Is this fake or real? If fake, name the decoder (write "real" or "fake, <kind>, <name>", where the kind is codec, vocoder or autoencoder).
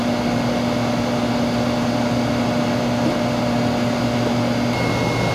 real